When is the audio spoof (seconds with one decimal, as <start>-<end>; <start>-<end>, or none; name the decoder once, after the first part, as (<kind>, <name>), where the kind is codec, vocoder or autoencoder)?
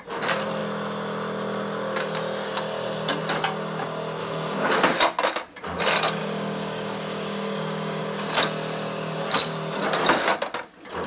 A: 4.2-4.7 (codec, DAC); 6.2-8.0